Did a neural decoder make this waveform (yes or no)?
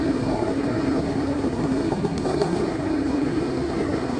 yes